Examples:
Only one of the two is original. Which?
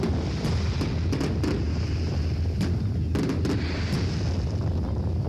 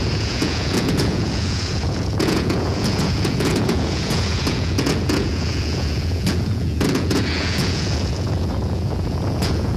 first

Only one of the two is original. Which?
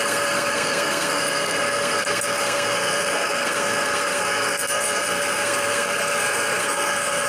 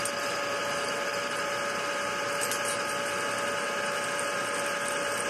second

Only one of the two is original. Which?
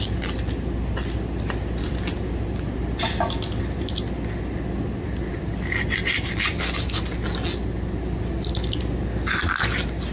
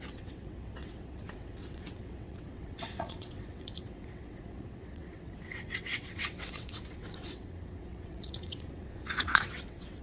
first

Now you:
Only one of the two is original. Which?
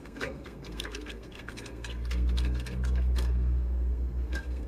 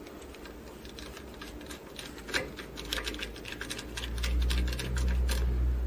second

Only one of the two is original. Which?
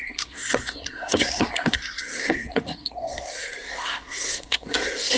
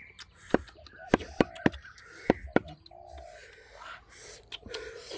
second